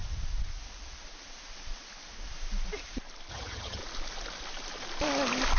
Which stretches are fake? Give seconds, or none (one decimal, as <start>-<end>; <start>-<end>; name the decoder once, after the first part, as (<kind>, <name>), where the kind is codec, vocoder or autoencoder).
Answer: 3.3-3.8 (vocoder, HiFi-GAN)

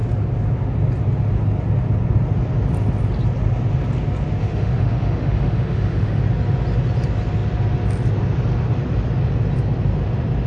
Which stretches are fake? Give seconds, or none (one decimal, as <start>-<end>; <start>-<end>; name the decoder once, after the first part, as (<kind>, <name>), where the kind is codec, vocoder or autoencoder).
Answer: 4.4-6.2 (autoencoder, DAC-VAE)

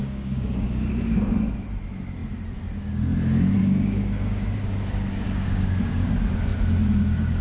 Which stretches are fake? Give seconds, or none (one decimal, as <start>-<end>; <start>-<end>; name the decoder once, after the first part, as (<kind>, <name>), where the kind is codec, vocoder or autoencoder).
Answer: 0.0-0.9 (codec, DAC); 3.6-6.1

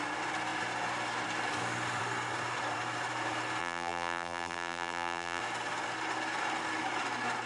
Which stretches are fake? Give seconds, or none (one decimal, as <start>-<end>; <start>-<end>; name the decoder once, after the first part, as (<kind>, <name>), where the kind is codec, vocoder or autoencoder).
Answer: 3.6-5.4 (vocoder, BigVGAN v2)

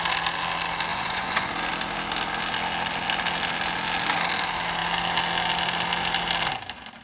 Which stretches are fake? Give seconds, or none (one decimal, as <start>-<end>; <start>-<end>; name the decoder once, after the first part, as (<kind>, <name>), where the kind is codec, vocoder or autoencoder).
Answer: 0.9-1.5 (vocoder, Vocos)

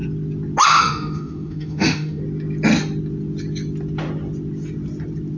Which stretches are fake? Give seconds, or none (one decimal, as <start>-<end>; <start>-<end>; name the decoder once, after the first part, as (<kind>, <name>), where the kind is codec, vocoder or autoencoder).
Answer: 0.8-2.2 (autoencoder, DAC-VAE)